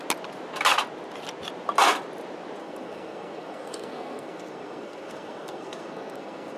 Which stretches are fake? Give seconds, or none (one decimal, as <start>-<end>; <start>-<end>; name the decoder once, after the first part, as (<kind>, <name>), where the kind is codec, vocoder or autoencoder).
2.6-6.6 (codec, SNAC)